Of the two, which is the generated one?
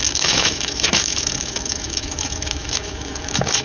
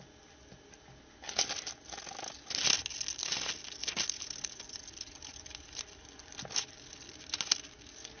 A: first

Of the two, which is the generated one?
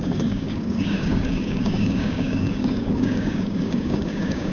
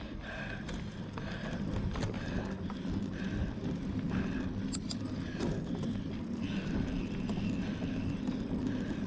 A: first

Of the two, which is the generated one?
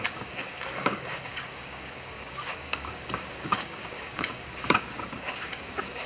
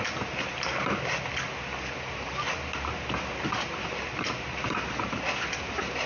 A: first